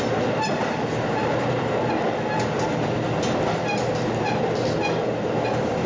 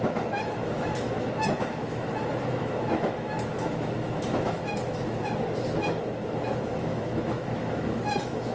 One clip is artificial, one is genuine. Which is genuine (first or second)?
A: first